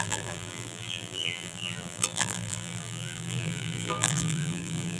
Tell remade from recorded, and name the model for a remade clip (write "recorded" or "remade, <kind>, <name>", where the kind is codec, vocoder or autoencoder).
remade, vocoder, BigVGAN v2